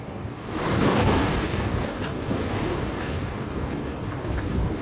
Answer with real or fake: fake